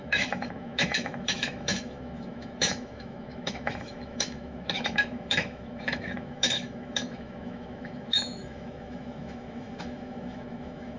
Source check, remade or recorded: remade